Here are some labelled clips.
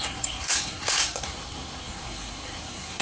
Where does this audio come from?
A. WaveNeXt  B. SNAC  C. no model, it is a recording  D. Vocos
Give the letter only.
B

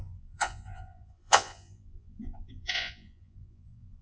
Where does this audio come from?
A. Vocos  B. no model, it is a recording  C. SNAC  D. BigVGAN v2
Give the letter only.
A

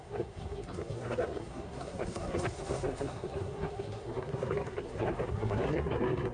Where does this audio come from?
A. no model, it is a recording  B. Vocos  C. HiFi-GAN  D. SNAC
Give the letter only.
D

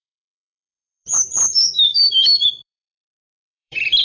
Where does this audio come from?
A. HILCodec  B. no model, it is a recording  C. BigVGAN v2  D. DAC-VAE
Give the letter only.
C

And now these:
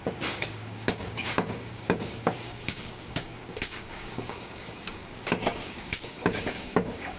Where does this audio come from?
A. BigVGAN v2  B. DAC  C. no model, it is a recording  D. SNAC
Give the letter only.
B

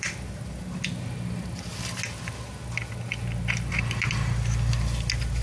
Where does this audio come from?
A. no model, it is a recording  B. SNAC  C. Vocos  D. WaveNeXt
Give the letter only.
A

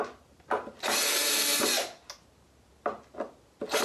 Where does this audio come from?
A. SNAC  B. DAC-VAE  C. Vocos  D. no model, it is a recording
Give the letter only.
D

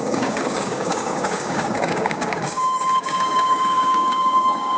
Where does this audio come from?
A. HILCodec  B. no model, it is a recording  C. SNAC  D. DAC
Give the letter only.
D